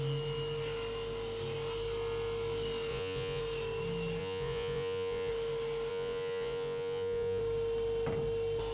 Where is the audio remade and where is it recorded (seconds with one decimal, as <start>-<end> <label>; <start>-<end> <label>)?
0.0-2.9 recorded; 2.9-3.4 remade; 3.4-4.2 recorded; 4.2-5.3 remade; 5.3-5.9 recorded; 5.9-7.4 remade; 7.4-8.7 recorded